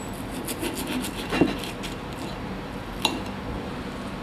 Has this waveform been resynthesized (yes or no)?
no